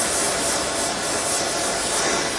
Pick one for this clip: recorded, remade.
recorded